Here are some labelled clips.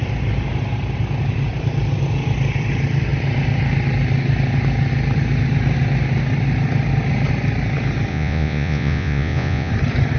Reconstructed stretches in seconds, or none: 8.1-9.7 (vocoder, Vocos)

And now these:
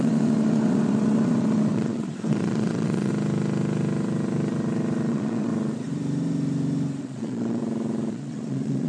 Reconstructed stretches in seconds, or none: 0.0-3.1 (vocoder, Vocos); 5.1-5.5; 7.0-7.6; 8.1-8.9